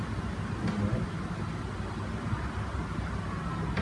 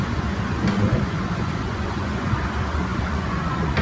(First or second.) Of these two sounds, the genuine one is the first